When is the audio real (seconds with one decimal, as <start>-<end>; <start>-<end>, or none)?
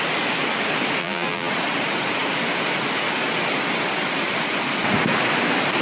0.0-1.0; 1.5-5.8